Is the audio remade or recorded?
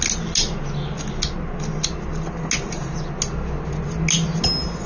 recorded